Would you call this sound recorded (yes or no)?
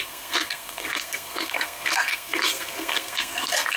no